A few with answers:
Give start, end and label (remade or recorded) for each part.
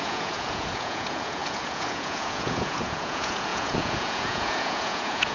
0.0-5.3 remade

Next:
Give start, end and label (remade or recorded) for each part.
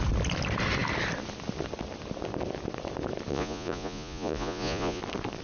0.0-3.3 recorded; 3.3-5.0 remade; 5.0-5.4 recorded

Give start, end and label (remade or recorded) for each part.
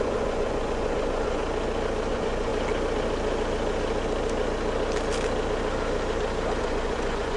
0.0-1.4 remade; 1.4-2.1 recorded; 2.1-2.5 remade; 2.5-6.6 recorded; 6.6-7.4 remade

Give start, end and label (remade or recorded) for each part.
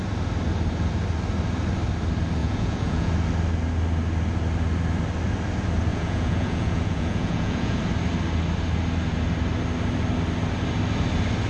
0.0-2.4 recorded; 2.4-3.1 remade; 3.1-5.9 recorded; 5.9-7.8 remade; 7.8-11.5 recorded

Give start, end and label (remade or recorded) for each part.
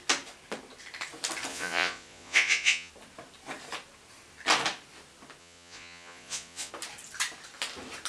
0.0-1.5 recorded; 1.5-2.9 remade; 2.9-5.4 recorded; 5.4-6.7 remade; 6.7-8.1 recorded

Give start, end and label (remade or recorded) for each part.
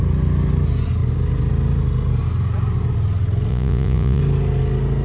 0.0-3.5 recorded; 3.5-4.2 remade; 4.2-5.0 recorded